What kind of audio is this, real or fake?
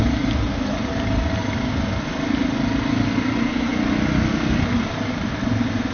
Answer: real